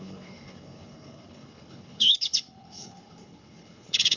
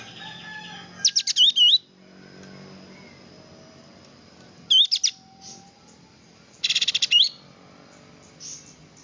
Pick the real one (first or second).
second